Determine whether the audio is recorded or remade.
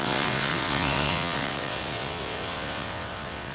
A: remade